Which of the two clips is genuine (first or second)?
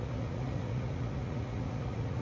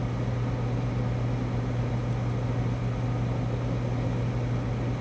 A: second